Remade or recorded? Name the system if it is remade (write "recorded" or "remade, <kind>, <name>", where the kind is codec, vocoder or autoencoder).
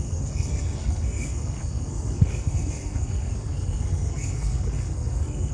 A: remade, codec, SNAC